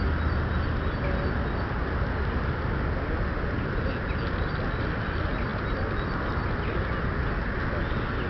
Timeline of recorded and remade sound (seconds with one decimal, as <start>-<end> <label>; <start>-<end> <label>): 0.0-8.3 recorded